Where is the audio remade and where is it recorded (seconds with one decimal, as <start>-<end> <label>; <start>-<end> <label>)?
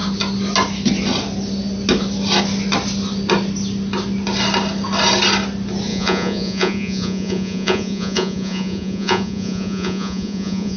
0.0-5.9 recorded; 5.9-10.8 remade